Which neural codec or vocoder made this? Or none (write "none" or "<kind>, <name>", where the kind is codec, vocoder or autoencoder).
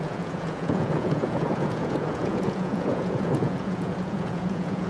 vocoder, Vocos